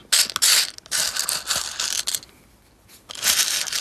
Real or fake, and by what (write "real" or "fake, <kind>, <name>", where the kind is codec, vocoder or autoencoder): real